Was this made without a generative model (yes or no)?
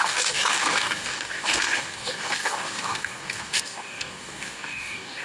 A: no